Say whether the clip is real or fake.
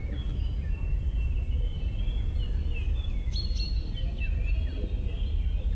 real